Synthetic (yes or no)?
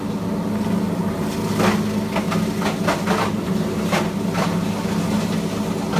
no